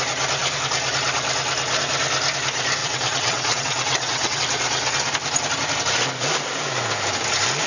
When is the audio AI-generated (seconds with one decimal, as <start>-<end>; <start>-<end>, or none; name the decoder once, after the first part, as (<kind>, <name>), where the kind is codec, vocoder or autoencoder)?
2.8-4.4 (vocoder, WaveNeXt)